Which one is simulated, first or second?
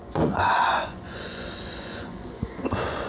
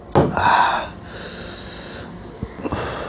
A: first